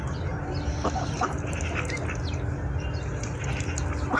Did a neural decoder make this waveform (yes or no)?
no